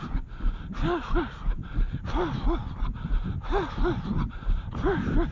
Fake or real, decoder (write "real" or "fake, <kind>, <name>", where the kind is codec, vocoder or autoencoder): real